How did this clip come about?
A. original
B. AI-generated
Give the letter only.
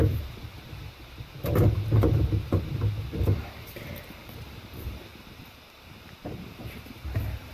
B